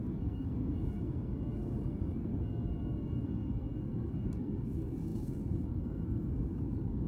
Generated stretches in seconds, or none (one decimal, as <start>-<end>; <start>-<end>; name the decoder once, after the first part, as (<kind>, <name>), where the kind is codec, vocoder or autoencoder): 0.0-7.1 (codec, SNAC)